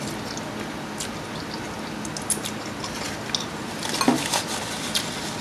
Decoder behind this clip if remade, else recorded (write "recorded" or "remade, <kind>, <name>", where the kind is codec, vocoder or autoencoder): recorded